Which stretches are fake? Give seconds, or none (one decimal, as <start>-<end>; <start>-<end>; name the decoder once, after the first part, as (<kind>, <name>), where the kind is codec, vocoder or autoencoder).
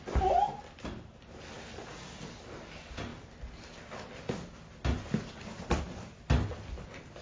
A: none